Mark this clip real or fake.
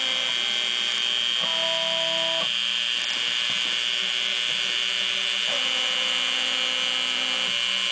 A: real